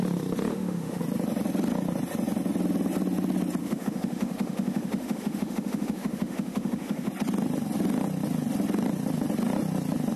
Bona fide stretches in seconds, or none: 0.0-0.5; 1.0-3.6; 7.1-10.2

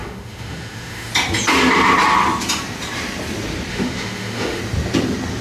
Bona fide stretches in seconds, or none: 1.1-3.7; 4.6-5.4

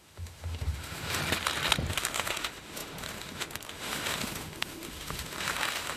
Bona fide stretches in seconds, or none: 1.2-1.9